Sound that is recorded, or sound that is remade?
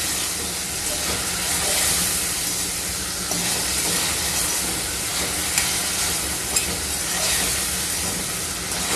recorded